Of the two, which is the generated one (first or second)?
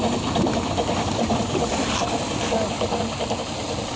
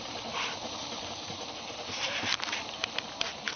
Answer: second